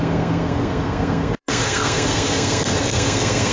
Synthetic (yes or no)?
yes